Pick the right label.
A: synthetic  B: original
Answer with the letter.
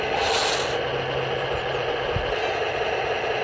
B